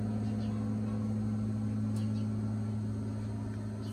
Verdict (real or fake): real